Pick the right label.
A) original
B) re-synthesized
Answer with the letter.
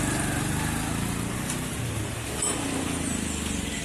A